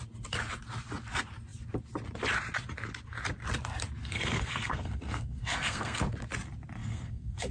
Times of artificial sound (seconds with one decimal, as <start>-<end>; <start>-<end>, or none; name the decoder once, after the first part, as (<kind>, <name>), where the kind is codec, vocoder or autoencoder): 4.0-6.0 (codec, SNAC); 6.8-7.5